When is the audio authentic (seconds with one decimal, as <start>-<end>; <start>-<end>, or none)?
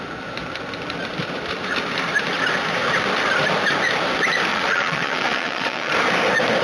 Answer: 0.0-4.5; 5.9-6.6